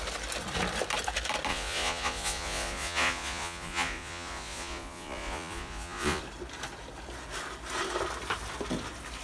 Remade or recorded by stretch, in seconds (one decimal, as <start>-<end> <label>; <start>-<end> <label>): 0.0-1.5 recorded; 1.5-6.2 remade; 6.2-9.2 recorded